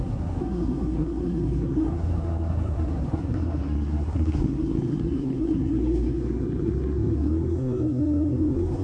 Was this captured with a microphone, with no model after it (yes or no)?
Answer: no